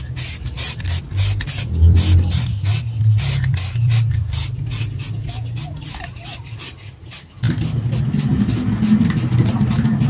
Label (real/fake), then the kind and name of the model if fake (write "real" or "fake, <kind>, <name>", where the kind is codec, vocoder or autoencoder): real